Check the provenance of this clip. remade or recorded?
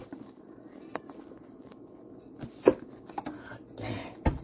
recorded